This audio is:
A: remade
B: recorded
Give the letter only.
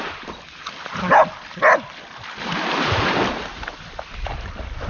B